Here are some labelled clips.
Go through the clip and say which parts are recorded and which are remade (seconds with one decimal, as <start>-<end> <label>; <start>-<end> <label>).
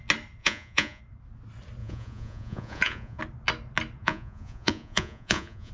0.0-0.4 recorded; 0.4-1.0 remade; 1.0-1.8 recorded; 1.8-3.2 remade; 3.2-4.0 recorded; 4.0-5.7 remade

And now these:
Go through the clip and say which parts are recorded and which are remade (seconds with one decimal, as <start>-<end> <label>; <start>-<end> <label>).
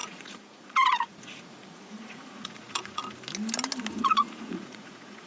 0.0-3.0 remade; 3.0-3.9 recorded; 3.9-5.3 remade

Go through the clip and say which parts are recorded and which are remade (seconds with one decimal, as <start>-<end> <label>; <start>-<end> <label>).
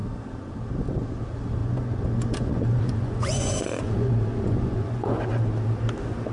0.0-1.6 recorded; 1.6-5.4 remade; 5.4-6.3 recorded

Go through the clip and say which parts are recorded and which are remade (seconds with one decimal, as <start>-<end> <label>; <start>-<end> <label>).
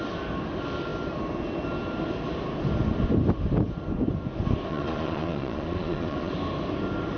0.0-4.7 recorded; 4.7-6.3 remade; 6.3-7.2 recorded